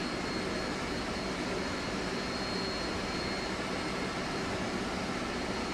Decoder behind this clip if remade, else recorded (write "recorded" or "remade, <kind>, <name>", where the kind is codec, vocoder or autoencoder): recorded